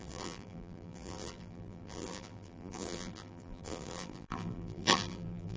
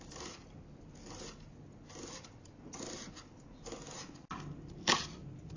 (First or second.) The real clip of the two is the second